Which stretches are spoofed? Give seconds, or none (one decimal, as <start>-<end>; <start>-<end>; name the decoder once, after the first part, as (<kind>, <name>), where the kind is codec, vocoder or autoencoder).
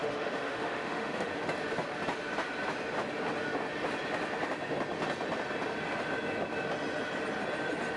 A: 0.0-1.3 (autoencoder, DAC-VAE)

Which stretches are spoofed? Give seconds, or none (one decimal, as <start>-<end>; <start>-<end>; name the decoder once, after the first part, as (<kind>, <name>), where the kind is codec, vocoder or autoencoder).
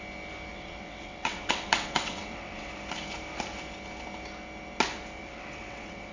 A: 0.5-2.7 (vocoder, WaveNeXt); 5.2-6.1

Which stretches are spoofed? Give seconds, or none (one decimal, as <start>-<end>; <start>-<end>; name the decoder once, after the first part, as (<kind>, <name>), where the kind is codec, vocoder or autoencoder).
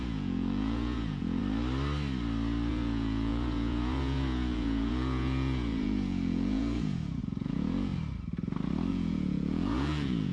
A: 0.0-1.4 (vocoder, Vocos); 2.7-7.9; 8.9-10.3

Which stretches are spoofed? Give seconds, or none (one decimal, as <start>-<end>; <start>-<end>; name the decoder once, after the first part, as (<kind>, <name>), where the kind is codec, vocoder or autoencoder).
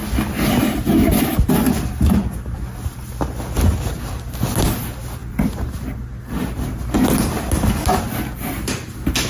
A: none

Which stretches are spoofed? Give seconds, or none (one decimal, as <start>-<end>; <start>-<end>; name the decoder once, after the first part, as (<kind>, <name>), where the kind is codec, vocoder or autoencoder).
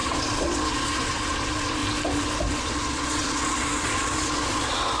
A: 0.0-1.8 (vocoder, Vocos); 2.6-5.0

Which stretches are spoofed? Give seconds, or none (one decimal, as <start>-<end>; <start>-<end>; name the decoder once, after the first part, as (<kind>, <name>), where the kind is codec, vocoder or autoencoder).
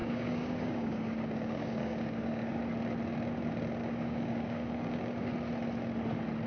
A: 0.0-2.6 (codec, DAC); 3.8-5.3